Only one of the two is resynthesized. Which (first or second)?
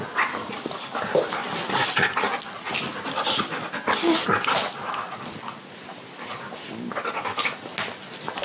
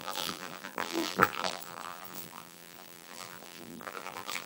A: second